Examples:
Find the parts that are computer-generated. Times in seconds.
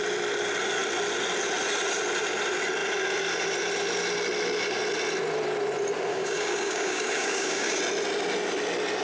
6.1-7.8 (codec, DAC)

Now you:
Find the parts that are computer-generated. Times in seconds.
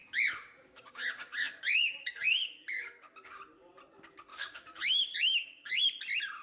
0.0-3.4 (codec, DAC); 4.3-5.8